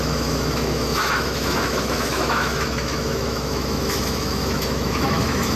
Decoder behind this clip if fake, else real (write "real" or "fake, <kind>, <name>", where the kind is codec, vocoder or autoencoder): fake, autoencoder, DAC-VAE